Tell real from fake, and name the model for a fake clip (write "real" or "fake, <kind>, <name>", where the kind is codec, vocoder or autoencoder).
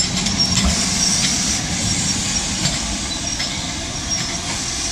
fake, vocoder, BigVGAN v2